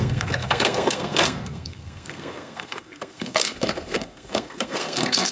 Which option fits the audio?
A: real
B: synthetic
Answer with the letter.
B